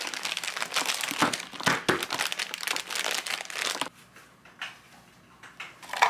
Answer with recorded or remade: recorded